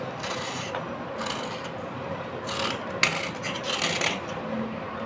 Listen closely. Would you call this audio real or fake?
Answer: real